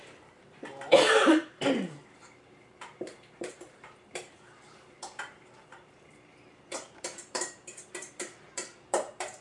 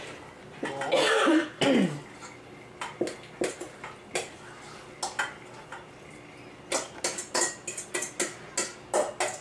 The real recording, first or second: second